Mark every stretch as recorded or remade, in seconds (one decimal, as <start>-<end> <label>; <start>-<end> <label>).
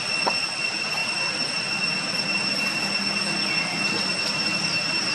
0.0-5.1 recorded